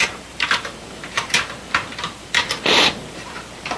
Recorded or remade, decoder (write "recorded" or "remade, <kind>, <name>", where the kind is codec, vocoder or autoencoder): remade, vocoder, BigVGAN v2